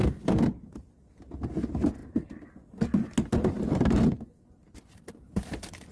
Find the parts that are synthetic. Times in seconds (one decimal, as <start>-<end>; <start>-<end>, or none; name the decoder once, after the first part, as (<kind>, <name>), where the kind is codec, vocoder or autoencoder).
none